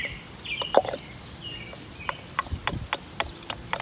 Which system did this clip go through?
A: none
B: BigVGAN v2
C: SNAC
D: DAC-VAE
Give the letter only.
A